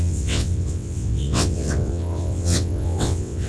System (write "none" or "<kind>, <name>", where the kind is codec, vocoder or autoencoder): vocoder, WaveNeXt